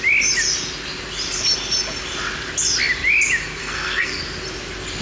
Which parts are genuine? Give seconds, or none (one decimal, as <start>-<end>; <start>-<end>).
0.0-3.6; 4.2-5.0